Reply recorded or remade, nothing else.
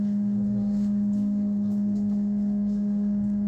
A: remade